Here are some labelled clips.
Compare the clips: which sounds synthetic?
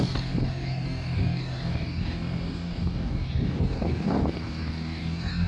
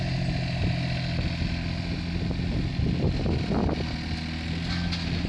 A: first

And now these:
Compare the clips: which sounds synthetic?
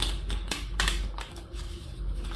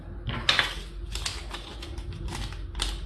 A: first